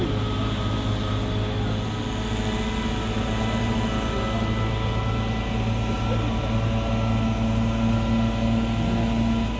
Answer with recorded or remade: recorded